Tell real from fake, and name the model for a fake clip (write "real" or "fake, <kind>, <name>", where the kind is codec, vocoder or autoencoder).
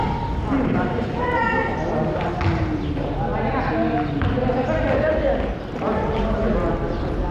real